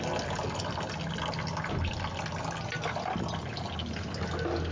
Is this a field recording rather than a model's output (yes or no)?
yes